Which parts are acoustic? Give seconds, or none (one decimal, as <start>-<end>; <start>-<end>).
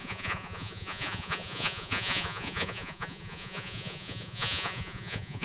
none